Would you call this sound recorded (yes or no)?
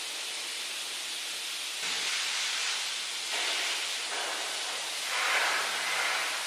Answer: yes